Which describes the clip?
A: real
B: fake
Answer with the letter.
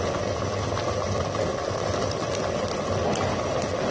A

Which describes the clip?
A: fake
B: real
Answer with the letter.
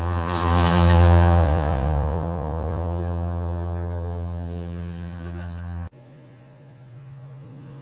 A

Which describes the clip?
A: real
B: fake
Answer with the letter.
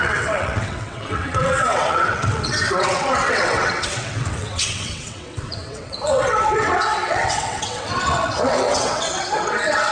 B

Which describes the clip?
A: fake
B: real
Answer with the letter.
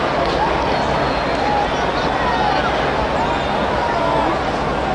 B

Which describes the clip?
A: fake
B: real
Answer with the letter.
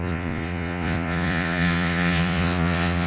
A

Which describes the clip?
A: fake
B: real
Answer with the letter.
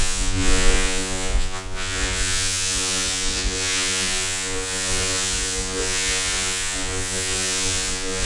A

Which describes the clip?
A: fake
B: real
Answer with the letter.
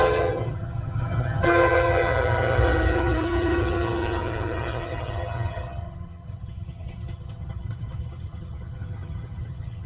A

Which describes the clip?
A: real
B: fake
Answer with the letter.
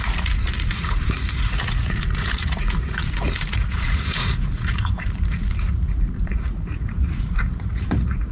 B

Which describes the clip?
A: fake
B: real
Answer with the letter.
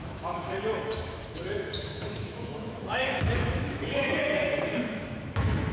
A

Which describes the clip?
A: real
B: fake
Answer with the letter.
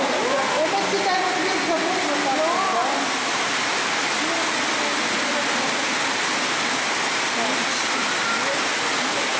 A